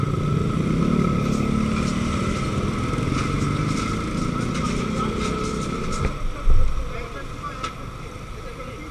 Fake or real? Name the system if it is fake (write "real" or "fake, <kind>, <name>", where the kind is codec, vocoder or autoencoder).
real